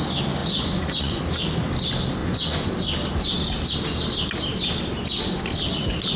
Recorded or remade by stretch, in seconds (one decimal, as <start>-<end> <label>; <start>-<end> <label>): 0.0-0.4 recorded; 0.4-1.2 remade; 1.2-2.2 recorded; 2.2-2.7 remade; 2.7-6.2 recorded